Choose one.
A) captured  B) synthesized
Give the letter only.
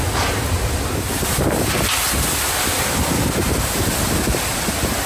A